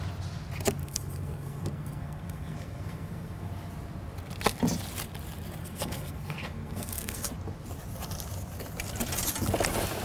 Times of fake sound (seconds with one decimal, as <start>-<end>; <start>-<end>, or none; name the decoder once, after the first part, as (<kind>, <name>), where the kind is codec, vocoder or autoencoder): 0.8-3.5 (codec, SNAC); 5.6-7.3